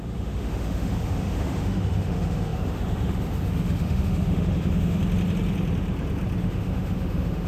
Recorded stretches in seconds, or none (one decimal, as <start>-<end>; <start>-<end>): 5.0-6.4